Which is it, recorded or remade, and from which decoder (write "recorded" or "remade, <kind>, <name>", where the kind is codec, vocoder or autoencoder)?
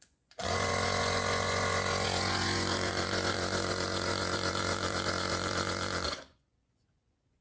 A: remade, vocoder, Vocos